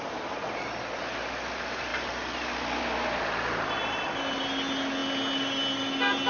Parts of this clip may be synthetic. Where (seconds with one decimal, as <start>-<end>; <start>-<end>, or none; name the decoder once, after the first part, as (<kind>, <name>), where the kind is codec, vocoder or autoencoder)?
none